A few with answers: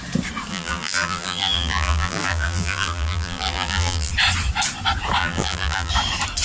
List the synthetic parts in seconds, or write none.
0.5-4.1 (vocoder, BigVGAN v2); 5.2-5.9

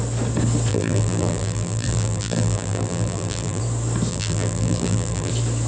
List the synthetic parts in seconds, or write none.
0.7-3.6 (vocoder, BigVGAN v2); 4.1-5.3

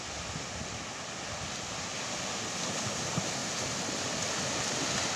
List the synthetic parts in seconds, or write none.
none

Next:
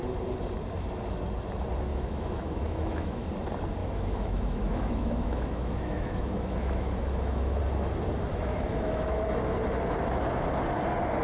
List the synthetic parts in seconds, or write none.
1.9-3.3 (autoencoder, DAC-VAE); 3.8-7.6; 8.3-9.2